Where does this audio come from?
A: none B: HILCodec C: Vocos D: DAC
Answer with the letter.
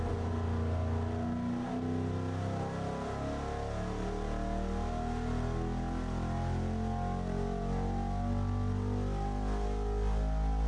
A